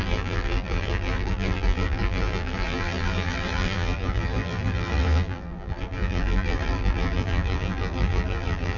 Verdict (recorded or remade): remade